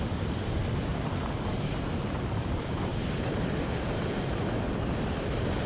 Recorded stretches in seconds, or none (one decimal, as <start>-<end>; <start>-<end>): 0.0-0.9; 2.0-2.9; 3.6-5.7

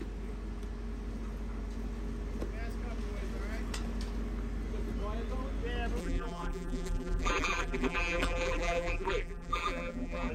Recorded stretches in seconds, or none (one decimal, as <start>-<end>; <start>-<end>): 0.0-6.0

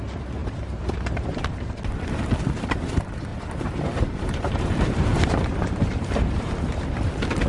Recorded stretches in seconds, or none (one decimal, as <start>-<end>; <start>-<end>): 0.0-0.4; 1.7-3.3; 6.5-7.5